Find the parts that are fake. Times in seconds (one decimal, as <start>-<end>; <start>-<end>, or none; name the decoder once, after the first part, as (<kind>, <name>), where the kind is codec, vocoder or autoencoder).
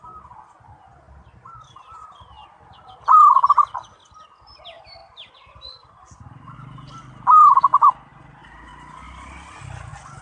2.4-3.5 (vocoder, BigVGAN v2); 5.0-8.2